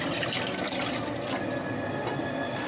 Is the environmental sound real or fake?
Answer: real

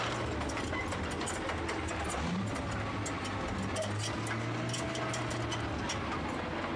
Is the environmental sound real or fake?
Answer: real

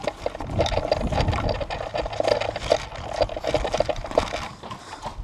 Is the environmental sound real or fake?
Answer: real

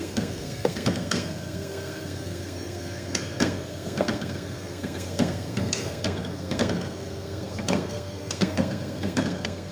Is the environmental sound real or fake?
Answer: fake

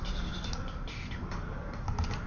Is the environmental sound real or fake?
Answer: real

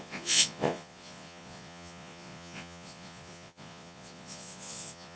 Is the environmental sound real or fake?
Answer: fake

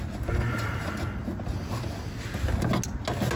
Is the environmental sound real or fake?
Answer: real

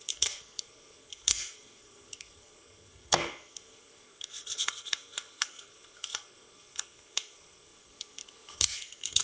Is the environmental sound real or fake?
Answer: fake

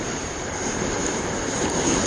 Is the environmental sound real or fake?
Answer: fake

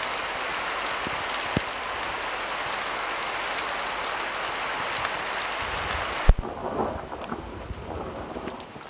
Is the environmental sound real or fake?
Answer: real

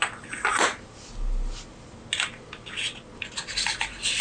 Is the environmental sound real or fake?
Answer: real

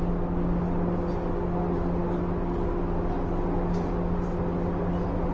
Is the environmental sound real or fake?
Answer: real